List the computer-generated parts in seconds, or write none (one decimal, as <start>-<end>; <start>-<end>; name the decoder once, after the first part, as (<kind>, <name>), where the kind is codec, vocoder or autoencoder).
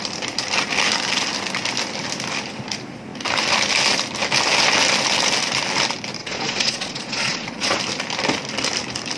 6.2-7.8 (vocoder, Vocos)